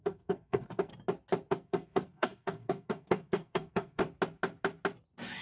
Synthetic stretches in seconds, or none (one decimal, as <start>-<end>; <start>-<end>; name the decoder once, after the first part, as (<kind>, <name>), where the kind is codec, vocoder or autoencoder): 0.0-0.9 (codec, SNAC); 1.5-4.0